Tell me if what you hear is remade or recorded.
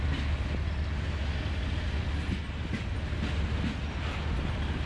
recorded